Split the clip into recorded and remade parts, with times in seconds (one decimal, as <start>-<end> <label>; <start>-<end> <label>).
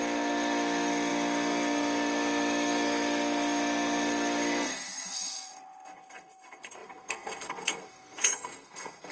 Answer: 0.0-9.1 remade